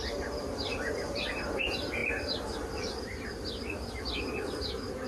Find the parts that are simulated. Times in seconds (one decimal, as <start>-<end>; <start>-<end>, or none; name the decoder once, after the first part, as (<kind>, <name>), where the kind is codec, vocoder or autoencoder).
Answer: 0.7-1.3 (vocoder, BigVGAN v2)